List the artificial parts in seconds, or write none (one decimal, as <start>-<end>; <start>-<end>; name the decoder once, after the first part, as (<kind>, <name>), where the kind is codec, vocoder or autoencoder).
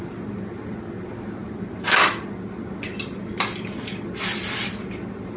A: none